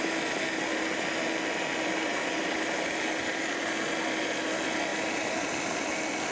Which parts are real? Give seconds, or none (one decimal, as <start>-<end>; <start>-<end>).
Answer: 0.0-6.3